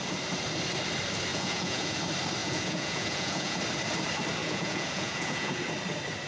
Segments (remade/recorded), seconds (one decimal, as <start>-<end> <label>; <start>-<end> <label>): 0.0-1.3 recorded; 1.3-2.0 remade; 2.0-2.4 recorded; 2.4-3.6 remade; 3.6-4.4 recorded; 4.4-5.6 remade; 5.6-6.3 recorded